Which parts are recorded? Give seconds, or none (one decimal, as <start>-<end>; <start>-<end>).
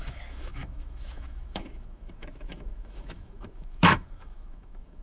none